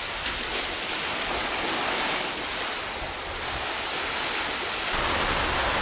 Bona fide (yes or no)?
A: yes